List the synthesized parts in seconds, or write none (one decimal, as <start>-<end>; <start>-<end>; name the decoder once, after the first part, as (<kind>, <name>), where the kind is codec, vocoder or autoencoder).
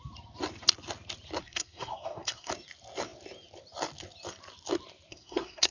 1.4-2.5 (codec, SNAC); 5.1-5.7